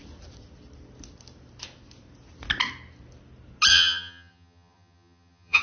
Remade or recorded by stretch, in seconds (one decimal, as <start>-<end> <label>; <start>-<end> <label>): 0.0-3.7 recorded; 3.7-5.6 remade